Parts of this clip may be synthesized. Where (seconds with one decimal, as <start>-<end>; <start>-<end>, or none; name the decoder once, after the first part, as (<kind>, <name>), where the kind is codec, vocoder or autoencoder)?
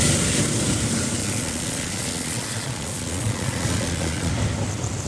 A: 1.2-4.3 (vocoder, Vocos)